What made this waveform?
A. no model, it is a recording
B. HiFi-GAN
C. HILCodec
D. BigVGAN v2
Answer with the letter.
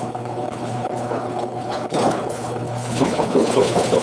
C